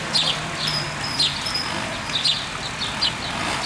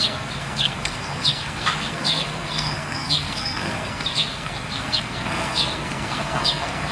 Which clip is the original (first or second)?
first